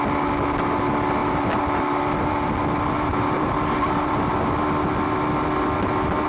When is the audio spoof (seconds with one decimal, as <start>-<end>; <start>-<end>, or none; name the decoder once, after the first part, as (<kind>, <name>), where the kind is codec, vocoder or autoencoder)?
1.2-2.3 (vocoder, BigVGAN v2); 3.1-4.3